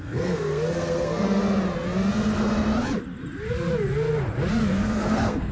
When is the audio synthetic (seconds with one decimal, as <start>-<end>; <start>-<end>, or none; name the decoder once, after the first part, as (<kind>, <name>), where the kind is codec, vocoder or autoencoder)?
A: 0.0-1.4 (codec, SNAC); 4.7-5.5

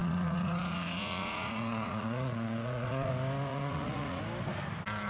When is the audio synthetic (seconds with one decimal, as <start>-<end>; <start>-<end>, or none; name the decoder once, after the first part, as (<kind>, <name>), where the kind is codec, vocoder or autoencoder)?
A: 0.0-3.1 (vocoder, Vocos); 3.5-4.2

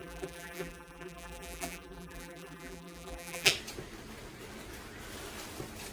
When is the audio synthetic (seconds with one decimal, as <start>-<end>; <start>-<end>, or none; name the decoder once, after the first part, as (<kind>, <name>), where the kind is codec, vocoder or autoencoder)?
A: 0.0-3.5 (vocoder, BigVGAN v2)

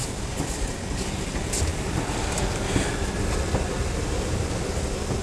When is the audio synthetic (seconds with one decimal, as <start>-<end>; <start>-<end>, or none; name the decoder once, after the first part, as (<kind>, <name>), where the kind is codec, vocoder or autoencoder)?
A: none

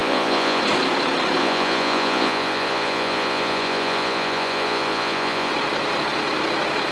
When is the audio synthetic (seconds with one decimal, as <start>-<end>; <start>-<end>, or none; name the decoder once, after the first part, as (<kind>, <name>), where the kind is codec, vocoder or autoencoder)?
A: 0.0-0.6 (vocoder, Vocos); 1.4-5.5